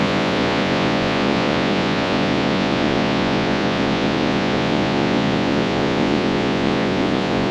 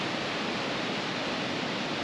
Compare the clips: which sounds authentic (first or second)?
second